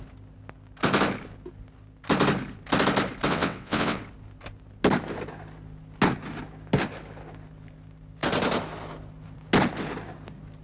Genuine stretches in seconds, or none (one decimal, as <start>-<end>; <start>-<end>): 0.0-3.3; 4.0-10.6